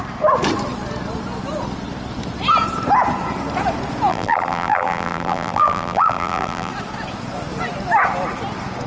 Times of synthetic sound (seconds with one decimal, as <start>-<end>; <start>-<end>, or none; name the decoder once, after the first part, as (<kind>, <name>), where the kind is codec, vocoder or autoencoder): 4.1-6.7 (vocoder, BigVGAN v2)